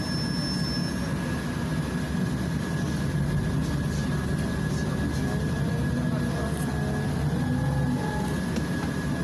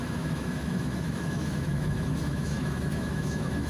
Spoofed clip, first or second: second